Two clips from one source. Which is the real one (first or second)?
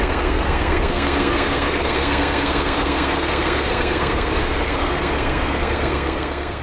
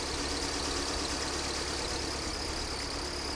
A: second